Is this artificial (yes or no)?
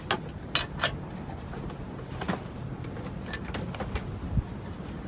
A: no